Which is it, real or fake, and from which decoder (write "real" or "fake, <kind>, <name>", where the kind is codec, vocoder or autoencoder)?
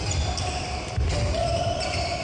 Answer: real